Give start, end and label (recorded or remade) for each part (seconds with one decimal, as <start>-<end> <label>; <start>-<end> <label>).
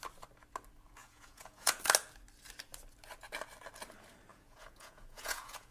0.0-1.0 recorded; 1.0-1.8 remade; 1.8-4.3 recorded; 4.3-5.7 remade